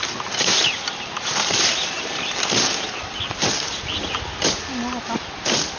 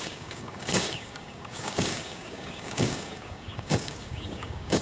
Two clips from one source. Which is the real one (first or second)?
first